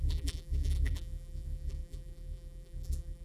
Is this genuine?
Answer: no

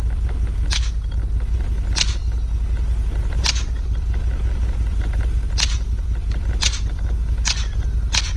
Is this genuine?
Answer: yes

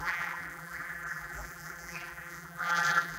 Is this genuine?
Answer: no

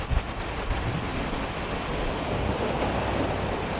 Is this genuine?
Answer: yes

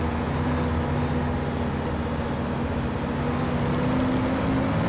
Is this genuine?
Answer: yes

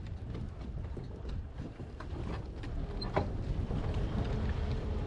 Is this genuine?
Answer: no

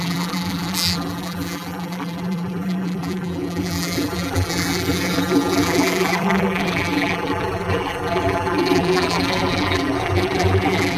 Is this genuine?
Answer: no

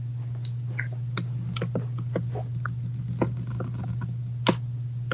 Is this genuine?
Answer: yes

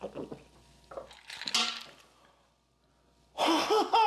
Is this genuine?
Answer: yes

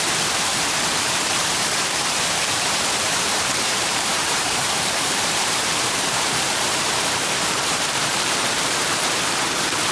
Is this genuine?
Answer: no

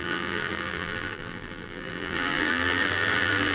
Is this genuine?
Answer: no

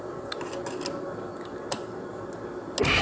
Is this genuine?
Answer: yes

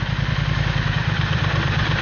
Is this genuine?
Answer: no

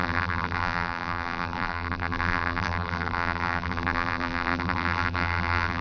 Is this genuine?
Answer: no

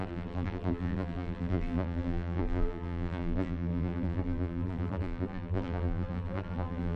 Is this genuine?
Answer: no